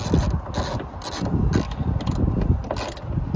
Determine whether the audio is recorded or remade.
recorded